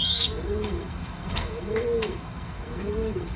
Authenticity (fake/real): fake